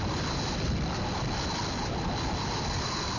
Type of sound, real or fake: real